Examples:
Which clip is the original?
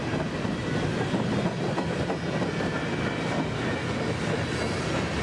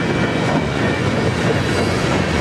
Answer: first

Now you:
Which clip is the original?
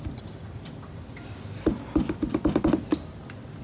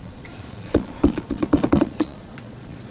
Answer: first